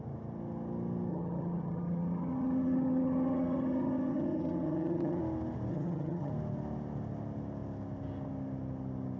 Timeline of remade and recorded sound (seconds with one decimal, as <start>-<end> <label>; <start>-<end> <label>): 0.0-1.1 recorded; 1.1-5.2 remade; 5.2-5.7 recorded; 5.7-6.3 remade; 6.3-9.2 recorded